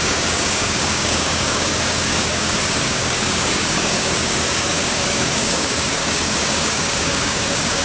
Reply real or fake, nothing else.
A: fake